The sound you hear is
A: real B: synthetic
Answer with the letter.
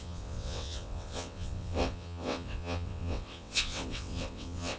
B